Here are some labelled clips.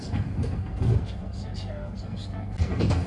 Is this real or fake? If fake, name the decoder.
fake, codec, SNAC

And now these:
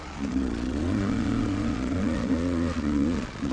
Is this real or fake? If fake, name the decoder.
fake, vocoder, Vocos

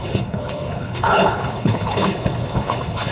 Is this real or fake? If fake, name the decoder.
fake, codec, HILCodec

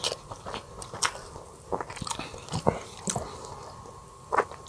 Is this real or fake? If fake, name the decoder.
fake, vocoder, BigVGAN v2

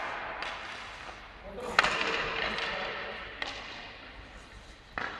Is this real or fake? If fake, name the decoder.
real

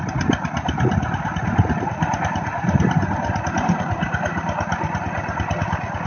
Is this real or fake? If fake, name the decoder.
real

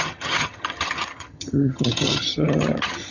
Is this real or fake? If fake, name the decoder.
fake, vocoder, HiFi-GAN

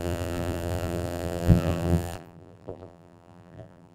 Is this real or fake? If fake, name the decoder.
fake, vocoder, BigVGAN v2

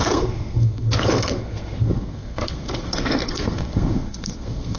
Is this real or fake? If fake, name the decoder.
fake, codec, SNAC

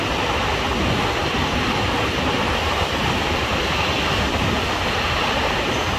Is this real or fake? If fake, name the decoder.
real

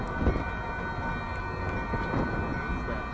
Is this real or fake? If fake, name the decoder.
real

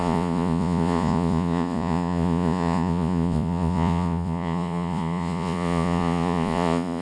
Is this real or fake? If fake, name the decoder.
fake, vocoder, Vocos